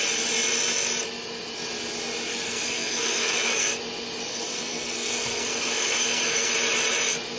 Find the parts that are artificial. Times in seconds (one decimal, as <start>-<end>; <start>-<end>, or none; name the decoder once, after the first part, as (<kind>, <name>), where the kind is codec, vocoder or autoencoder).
2.3-3.8 (codec, SNAC); 4.3-6.5